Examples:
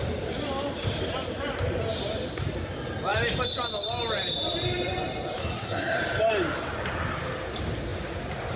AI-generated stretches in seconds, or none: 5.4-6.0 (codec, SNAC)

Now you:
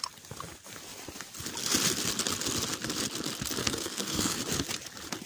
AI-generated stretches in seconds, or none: 3.6-4.4 (codec, SNAC)

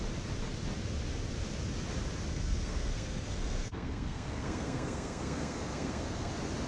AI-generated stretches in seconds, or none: 2.3-6.3 (codec, SNAC)

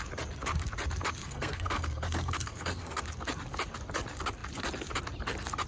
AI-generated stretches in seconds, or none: 1.2-3.0 (codec, SNAC)